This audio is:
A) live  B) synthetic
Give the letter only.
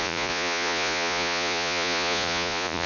B